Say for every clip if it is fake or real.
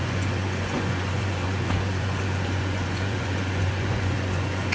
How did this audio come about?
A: fake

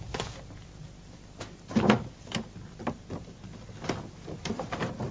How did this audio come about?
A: real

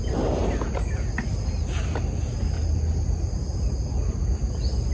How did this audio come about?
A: real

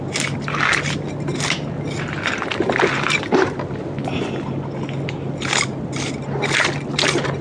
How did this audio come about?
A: real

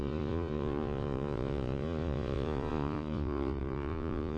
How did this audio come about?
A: fake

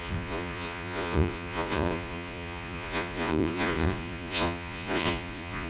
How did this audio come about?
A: fake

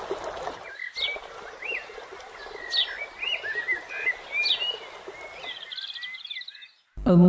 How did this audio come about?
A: real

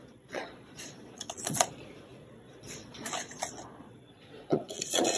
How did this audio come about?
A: fake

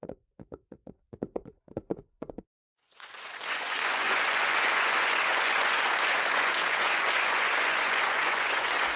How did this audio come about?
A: fake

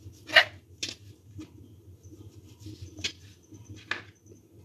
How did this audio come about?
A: real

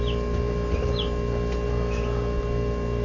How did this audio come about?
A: real